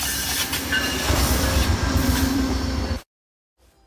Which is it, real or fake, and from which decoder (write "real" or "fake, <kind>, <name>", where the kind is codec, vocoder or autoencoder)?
fake, vocoder, BigVGAN v2